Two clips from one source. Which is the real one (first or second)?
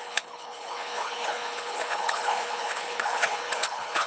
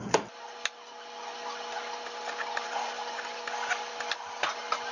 second